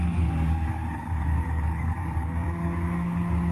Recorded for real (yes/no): no